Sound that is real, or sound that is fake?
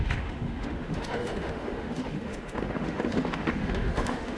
fake